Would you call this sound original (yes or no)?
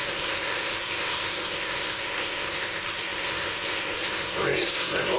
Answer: no